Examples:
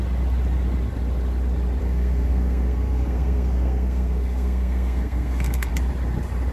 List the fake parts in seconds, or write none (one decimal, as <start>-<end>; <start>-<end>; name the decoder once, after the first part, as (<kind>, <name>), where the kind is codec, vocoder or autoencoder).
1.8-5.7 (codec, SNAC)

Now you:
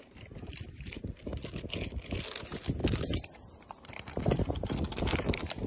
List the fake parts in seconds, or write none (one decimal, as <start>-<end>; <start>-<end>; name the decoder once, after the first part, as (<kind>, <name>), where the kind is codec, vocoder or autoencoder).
0.0-1.3 (vocoder, BigVGAN v2); 2.4-5.7

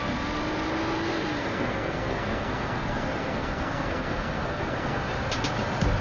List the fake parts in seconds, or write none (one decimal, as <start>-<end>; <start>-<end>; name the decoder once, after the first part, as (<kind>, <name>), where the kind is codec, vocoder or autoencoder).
1.4-5.0 (codec, SNAC)